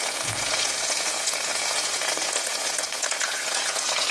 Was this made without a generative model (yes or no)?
no